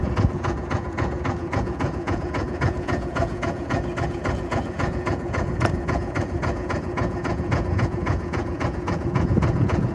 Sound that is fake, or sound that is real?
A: fake